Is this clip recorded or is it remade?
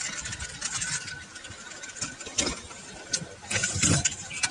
recorded